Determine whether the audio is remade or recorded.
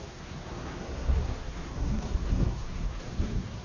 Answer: remade